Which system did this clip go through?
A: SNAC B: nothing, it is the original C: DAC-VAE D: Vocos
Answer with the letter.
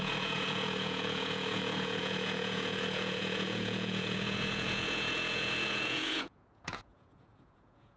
D